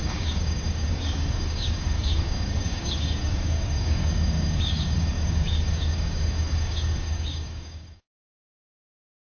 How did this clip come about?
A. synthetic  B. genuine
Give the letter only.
A